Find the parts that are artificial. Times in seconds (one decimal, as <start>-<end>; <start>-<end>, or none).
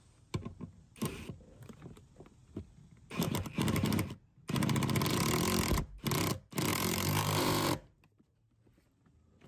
6.7-8.3